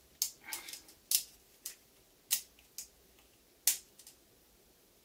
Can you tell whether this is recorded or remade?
recorded